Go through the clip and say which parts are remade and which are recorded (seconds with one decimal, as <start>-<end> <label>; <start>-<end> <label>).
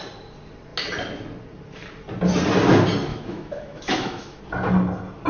0.0-3.1 recorded; 3.1-4.4 remade; 4.4-5.3 recorded